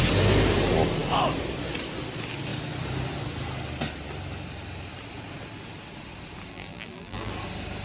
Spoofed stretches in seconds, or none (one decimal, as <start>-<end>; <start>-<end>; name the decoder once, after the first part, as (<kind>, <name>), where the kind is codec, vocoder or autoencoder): 6.5-7.3 (vocoder, BigVGAN v2)